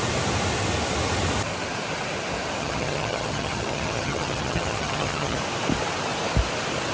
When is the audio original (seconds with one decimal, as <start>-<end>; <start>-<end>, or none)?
0.0-2.6; 5.4-6.9